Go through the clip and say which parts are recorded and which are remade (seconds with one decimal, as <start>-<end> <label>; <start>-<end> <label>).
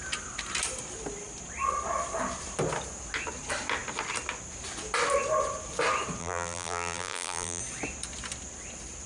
0.0-6.2 recorded; 6.2-7.6 remade; 7.6-9.1 recorded